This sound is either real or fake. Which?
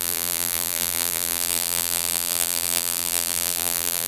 fake